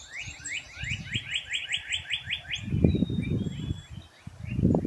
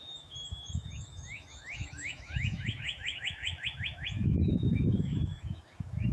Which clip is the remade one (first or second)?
second